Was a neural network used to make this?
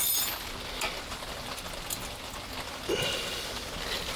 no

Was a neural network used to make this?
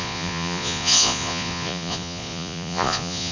yes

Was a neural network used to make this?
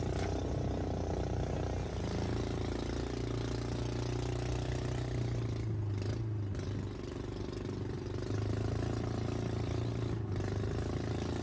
no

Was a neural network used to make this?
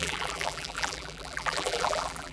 yes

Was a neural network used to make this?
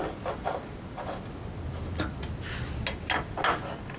no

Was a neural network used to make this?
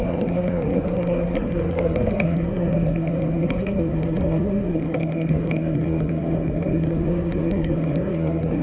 yes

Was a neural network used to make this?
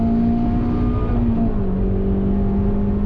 no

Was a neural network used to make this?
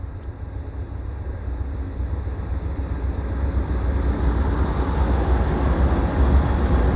no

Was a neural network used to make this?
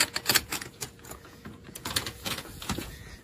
yes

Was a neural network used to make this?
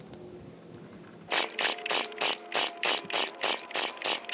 no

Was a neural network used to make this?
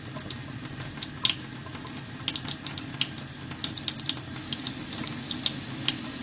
no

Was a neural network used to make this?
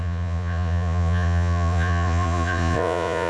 yes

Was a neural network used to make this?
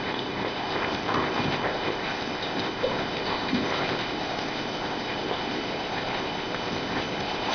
yes